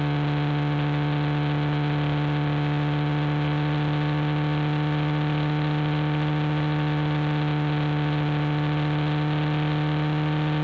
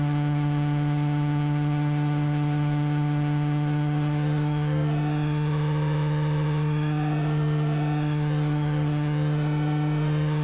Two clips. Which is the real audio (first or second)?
first